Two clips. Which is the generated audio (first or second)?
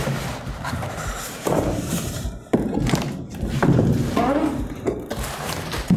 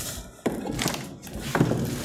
first